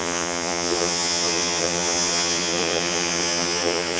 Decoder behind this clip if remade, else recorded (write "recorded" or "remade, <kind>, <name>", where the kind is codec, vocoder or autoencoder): remade, vocoder, Vocos